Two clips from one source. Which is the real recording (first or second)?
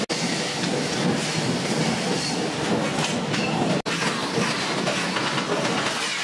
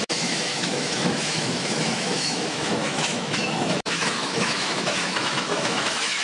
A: first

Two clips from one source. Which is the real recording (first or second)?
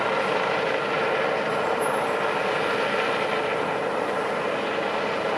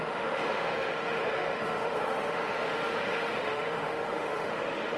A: first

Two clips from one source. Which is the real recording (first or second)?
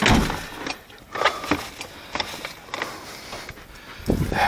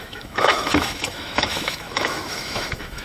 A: first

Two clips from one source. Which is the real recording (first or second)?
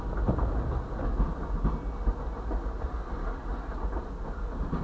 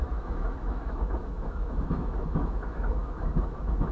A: first